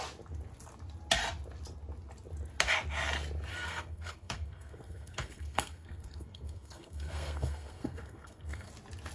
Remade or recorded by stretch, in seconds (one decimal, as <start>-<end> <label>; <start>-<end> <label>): 0.0-3.5 recorded; 3.5-8.7 remade; 8.7-9.1 recorded